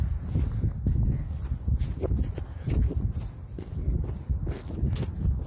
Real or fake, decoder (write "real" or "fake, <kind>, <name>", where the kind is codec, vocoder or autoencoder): real